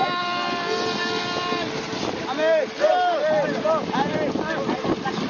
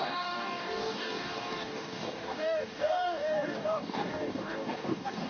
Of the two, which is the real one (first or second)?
first